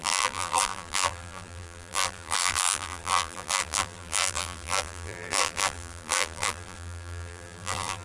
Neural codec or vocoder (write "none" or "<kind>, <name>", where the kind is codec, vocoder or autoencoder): vocoder, BigVGAN v2